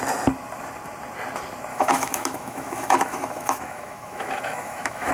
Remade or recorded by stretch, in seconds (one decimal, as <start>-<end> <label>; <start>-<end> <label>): 0.0-1.7 recorded; 1.7-5.1 remade